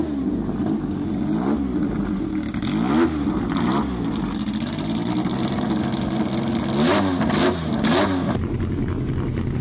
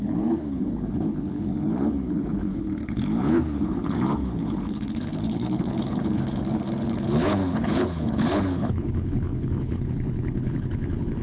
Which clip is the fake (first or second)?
second